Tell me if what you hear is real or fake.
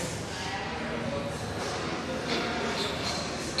real